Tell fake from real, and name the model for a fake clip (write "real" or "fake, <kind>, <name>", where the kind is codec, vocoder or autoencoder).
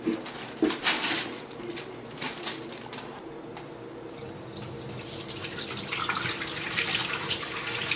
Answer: real